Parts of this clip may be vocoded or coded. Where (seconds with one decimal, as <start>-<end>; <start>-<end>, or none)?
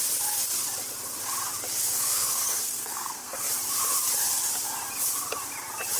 1.8-3.5